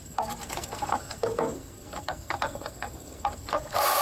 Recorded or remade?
remade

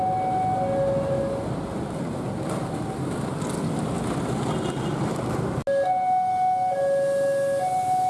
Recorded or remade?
recorded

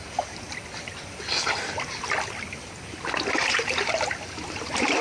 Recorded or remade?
recorded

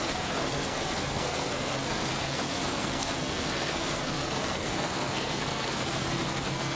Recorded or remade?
remade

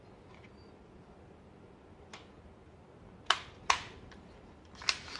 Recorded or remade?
recorded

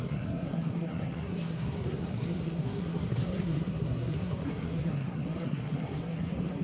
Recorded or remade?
remade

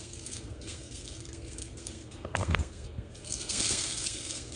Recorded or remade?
remade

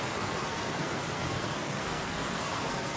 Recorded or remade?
remade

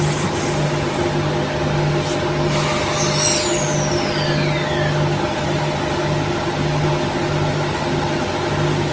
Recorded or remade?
recorded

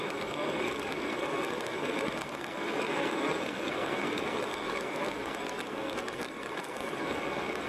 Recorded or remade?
remade